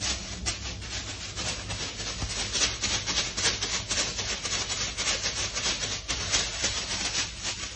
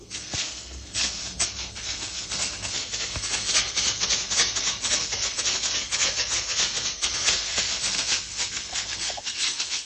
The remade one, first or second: second